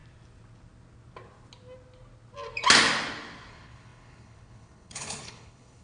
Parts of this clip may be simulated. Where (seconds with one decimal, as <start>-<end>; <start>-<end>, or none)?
3.5-5.8